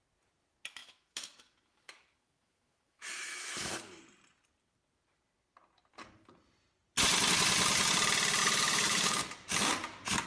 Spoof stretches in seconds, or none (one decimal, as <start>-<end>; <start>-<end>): 0.8-4.0; 8.4-9.2